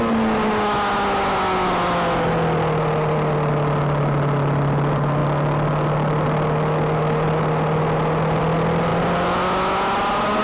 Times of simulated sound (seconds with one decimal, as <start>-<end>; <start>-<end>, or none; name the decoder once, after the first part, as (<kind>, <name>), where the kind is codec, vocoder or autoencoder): none